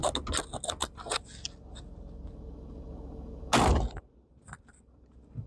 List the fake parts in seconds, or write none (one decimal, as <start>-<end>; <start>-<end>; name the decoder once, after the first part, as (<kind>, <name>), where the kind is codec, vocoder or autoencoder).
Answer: none